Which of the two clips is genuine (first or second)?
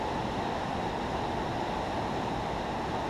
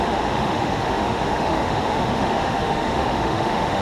first